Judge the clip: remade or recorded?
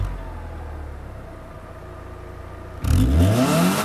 recorded